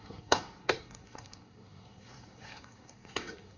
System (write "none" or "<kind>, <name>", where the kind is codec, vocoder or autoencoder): codec, SNAC